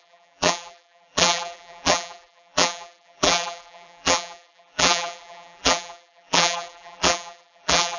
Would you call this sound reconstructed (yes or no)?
yes